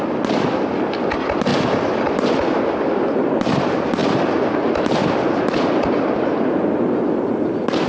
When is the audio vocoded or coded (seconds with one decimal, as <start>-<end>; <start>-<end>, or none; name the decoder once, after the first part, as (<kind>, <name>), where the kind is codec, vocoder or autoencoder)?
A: none